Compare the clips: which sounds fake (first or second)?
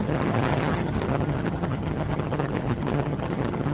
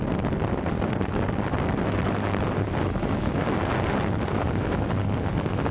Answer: first